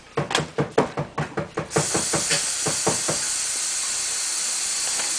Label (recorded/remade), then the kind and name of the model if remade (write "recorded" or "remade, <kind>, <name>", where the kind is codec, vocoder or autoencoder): recorded